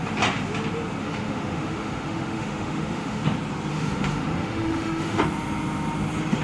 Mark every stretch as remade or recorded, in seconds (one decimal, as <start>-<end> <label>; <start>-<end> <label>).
0.0-1.0 recorded; 1.0-3.2 remade; 3.2-3.7 recorded; 3.7-5.2 remade; 5.2-6.4 recorded